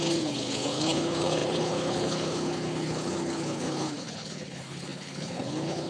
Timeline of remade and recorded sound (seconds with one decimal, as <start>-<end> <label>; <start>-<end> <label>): 0.0-5.9 remade

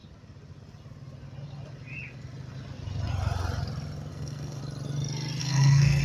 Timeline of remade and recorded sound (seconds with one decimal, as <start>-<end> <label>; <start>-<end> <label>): 0.0-4.1 recorded; 4.1-4.6 remade; 4.6-5.4 recorded; 5.4-6.0 remade

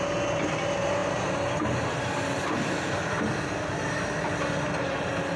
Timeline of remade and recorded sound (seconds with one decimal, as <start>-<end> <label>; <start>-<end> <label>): 0.0-5.4 recorded

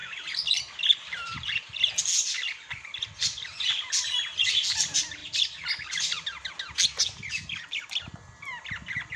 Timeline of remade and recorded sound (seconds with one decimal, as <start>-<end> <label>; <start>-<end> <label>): 0.0-9.2 recorded

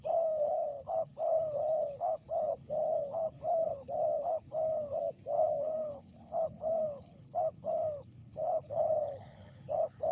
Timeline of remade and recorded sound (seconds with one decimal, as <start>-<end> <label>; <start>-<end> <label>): 0.0-5.0 remade; 5.0-5.6 recorded; 5.6-10.1 remade

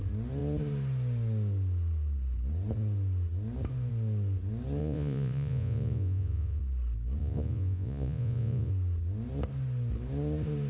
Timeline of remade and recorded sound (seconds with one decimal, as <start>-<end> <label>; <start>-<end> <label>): 0.0-4.8 recorded; 4.8-6.6 remade; 6.6-7.2 recorded; 7.2-8.7 remade; 8.7-10.7 recorded

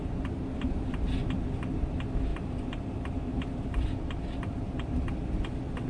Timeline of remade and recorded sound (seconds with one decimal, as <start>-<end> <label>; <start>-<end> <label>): 0.0-5.9 recorded